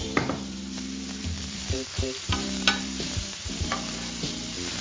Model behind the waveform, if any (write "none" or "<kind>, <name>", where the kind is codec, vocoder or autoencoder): vocoder, BigVGAN v2